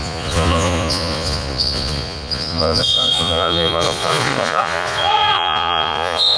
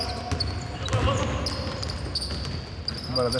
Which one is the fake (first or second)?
first